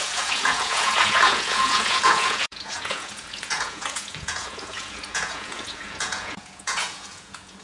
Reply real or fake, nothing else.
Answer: fake